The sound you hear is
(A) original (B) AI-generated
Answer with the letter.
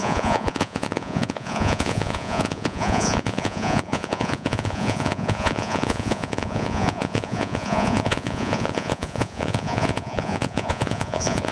B